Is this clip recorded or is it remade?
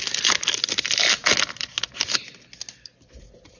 recorded